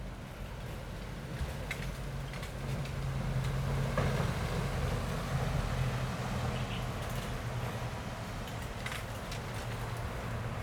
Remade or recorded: recorded